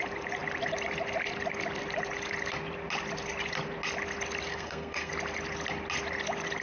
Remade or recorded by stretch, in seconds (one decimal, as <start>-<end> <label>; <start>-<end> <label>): 0.0-4.5 recorded; 4.5-5.1 remade; 5.1-6.6 recorded